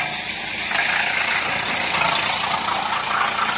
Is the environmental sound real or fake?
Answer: real